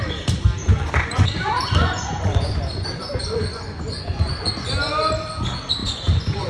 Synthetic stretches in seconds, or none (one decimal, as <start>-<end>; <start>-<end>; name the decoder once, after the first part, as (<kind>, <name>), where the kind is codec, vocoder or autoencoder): 0.6-4.5 (vocoder, Vocos); 5.8-6.5